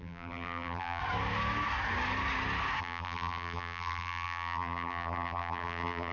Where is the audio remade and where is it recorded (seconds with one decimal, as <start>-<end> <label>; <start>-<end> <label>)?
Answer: 0.0-1.0 remade; 1.0-2.8 recorded; 2.8-6.1 remade